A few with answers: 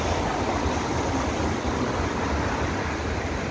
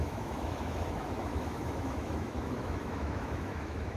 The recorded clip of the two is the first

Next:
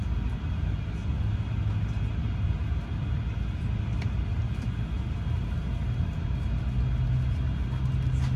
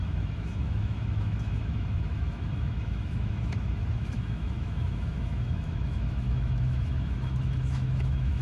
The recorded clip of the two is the first